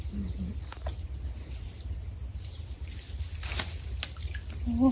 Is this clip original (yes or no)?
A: yes